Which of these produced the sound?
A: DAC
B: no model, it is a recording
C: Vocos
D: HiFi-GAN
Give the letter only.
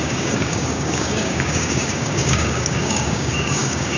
A